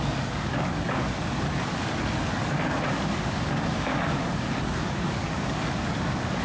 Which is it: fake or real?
fake